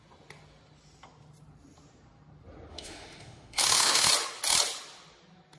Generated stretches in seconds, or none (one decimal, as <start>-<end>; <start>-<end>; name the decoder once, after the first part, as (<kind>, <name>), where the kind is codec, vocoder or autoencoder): 2.7-4.1 (autoencoder, DAC-VAE)